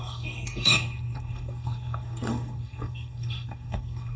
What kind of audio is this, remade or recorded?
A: remade